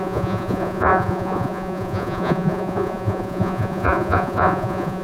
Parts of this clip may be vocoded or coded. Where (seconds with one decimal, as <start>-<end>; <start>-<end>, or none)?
0.0-5.0